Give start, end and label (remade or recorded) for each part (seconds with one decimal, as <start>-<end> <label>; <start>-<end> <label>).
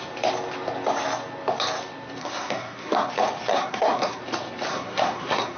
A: 0.0-2.2 recorded; 2.2-3.1 remade; 3.1-3.5 recorded; 3.5-4.2 remade; 4.2-4.7 recorded; 4.7-5.6 remade